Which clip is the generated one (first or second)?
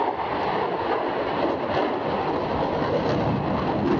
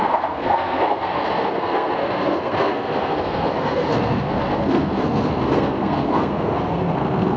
second